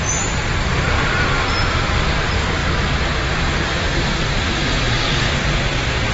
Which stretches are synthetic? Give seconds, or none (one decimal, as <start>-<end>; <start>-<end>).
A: 0.0-2.6; 3.8-6.1